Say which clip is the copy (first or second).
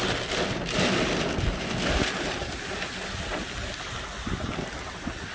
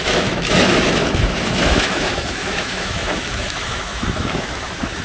second